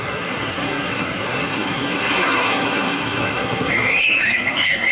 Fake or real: fake